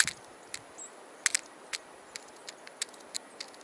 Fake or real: real